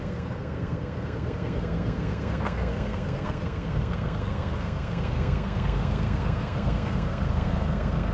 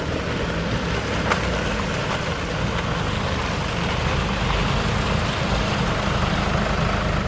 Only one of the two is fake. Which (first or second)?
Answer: first